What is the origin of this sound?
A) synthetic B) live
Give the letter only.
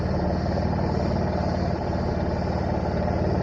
B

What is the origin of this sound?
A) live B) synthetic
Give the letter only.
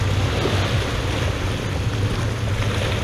A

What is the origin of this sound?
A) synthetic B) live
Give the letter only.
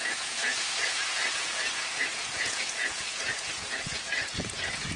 A